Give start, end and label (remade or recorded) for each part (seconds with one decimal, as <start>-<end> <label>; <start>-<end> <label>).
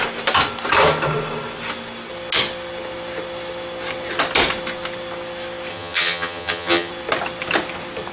0.0-5.7 recorded; 5.7-6.9 remade; 6.9-8.1 recorded